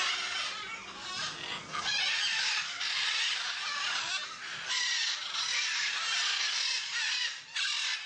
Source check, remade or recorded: recorded